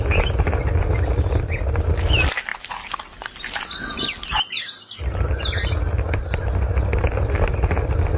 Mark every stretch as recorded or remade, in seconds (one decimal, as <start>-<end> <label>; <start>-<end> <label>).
0.0-8.2 recorded